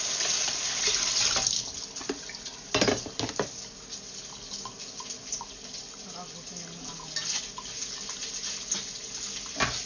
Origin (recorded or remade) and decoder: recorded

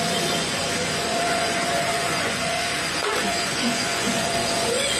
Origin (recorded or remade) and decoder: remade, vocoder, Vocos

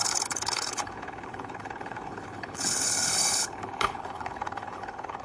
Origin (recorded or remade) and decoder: remade, codec, HILCodec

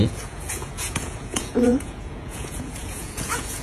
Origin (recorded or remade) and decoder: remade, vocoder, Vocos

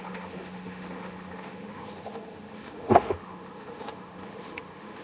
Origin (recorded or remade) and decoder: remade, autoencoder, DAC-VAE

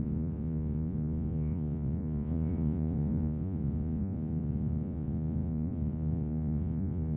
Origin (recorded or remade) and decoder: remade, vocoder, Vocos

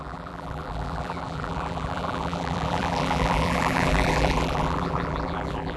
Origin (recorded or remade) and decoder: remade, vocoder, BigVGAN v2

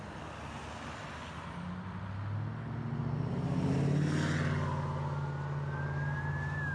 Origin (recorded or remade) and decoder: recorded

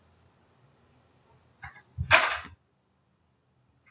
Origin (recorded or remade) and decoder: recorded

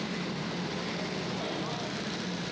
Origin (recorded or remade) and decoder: recorded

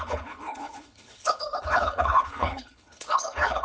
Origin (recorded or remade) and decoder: remade, codec, HILCodec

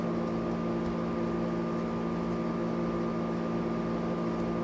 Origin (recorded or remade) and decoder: recorded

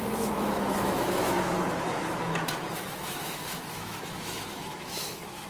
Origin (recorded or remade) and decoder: remade, autoencoder, DAC-VAE